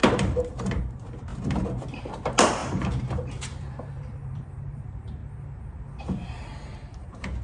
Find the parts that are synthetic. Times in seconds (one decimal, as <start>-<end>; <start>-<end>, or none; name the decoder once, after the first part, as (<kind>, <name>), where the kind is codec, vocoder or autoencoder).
0.0-5.2 (vocoder, BigVGAN v2); 6.0-7.4